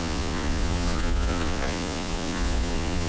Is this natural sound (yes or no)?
no